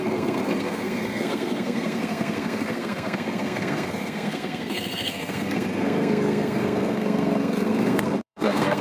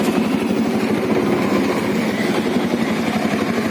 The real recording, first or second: second